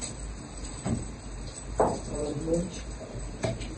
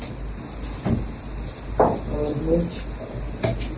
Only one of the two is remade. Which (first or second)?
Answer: first